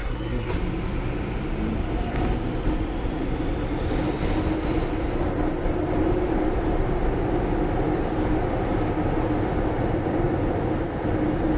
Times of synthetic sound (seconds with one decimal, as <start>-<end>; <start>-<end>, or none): 0.0-0.5